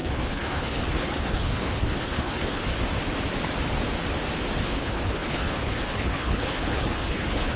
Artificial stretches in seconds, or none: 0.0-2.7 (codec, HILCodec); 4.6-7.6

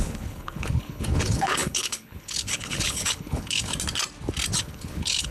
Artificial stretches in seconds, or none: 0.0-3.7 (codec, HILCodec); 4.6-5.3

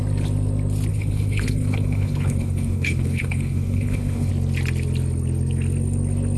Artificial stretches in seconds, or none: 0.9-4.3 (codec, HILCodec)

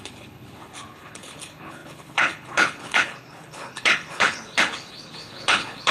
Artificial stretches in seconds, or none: 0.0-5.9 (codec, HILCodec)